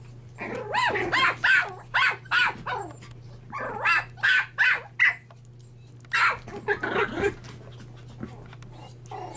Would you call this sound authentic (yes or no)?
yes